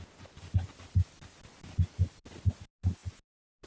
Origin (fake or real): real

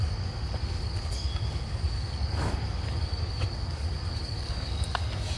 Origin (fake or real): fake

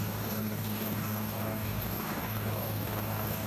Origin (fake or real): fake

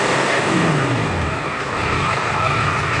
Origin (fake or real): fake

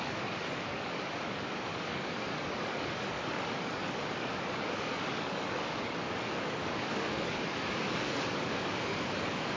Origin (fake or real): fake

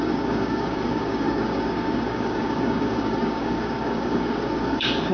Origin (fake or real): fake